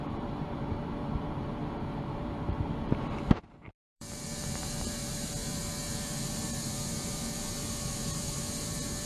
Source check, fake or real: fake